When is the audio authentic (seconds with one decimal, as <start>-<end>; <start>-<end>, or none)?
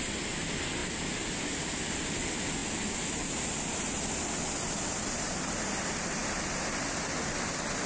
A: 0.0-7.9